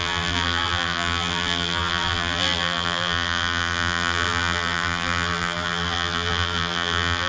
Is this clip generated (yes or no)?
yes